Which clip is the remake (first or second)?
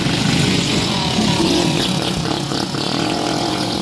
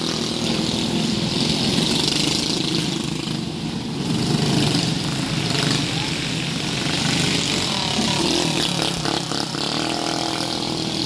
first